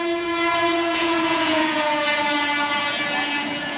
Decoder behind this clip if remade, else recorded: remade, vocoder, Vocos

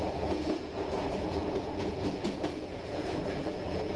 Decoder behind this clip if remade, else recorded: remade, vocoder, Vocos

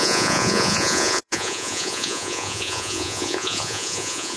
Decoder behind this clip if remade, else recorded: remade, vocoder, Vocos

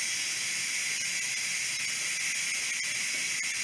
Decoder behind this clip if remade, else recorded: recorded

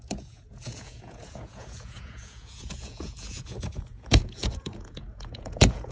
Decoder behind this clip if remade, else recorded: remade, vocoder, Vocos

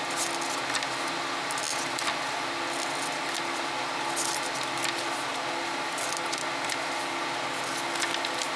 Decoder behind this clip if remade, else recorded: recorded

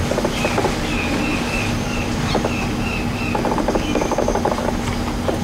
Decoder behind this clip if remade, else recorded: recorded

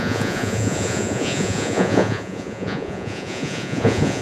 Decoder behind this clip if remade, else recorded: remade, vocoder, Vocos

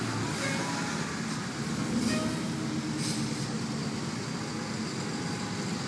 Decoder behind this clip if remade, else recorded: recorded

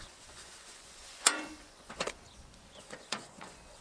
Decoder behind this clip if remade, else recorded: remade, vocoder, Vocos